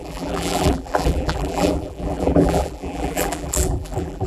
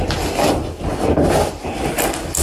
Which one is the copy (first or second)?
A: first